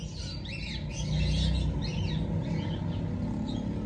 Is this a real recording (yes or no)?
yes